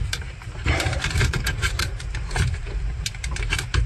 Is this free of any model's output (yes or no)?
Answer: no